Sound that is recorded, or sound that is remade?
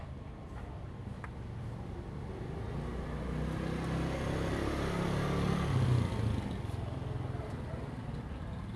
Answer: recorded